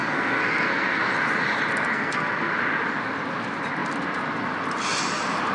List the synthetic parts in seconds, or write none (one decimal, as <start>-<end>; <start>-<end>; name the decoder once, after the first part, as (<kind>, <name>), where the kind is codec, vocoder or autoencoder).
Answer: 0.0-1.0 (codec, SNAC); 1.9-2.5